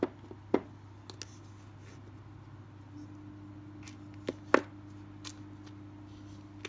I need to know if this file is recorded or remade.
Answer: recorded